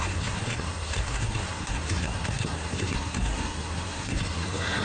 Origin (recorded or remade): remade